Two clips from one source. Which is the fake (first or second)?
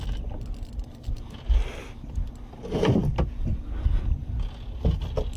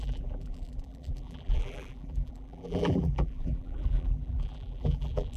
second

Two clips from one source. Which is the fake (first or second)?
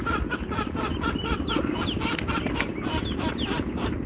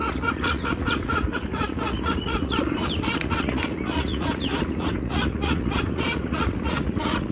second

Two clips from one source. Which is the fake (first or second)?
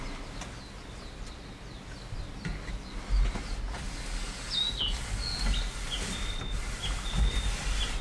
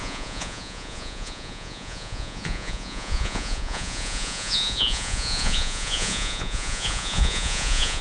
second